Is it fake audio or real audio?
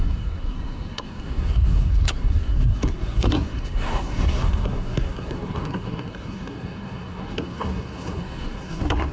fake